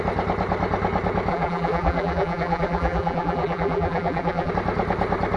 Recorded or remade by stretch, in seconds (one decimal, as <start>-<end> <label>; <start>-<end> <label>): 0.0-1.3 recorded; 1.3-4.5 remade; 4.5-5.4 recorded